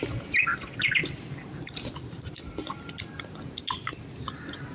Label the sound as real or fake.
real